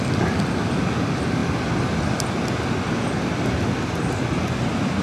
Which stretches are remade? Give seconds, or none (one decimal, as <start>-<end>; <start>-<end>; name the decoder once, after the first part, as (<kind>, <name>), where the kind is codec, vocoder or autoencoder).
none